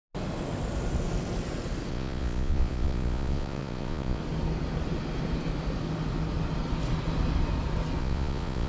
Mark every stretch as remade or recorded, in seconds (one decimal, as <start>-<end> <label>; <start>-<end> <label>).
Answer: 0.0-1.9 recorded; 1.9-4.2 remade; 4.2-8.0 recorded; 8.0-8.7 remade